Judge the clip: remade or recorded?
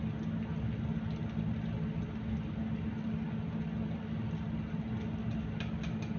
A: recorded